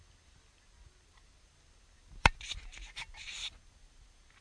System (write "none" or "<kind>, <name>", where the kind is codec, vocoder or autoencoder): none